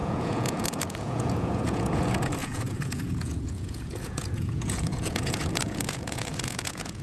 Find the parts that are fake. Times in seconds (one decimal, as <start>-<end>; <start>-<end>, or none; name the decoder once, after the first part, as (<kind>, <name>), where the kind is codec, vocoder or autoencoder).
0.0-7.0 (vocoder, Vocos)

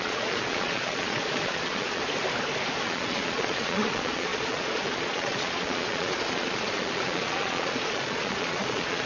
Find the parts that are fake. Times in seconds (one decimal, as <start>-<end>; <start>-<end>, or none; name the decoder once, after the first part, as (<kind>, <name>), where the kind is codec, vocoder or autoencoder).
0.0-2.0 (vocoder, Vocos); 2.8-9.1